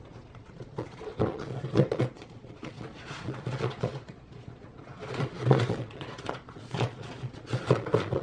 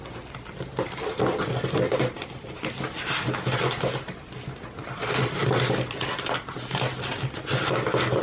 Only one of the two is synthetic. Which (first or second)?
first